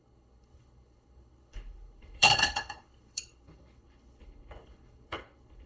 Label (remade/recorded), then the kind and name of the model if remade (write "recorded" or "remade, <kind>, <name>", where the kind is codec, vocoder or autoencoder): remade, codec, HILCodec